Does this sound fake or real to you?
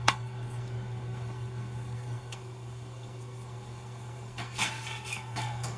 fake